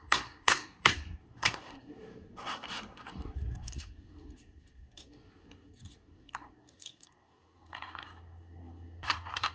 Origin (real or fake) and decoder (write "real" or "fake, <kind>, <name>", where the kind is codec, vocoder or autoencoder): fake, codec, SNAC